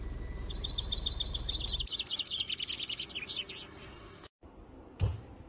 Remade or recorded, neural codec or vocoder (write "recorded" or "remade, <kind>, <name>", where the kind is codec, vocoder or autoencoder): recorded